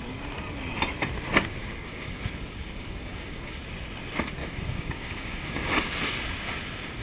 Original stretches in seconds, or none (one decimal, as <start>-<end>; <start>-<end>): 0.0-1.6; 3.6-4.4; 6.0-7.0